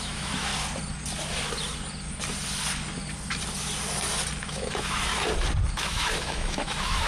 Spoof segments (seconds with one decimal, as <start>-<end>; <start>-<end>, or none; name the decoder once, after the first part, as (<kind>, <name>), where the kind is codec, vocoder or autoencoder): 0.0-0.5 (autoencoder, DAC-VAE); 4.4-5.1; 5.7-7.1